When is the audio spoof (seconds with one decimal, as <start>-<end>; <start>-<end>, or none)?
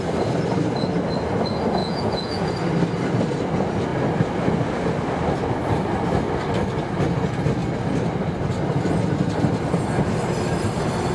1.8-2.5